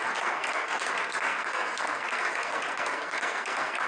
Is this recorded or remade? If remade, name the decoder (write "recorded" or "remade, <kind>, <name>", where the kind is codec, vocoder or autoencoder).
remade, codec, SNAC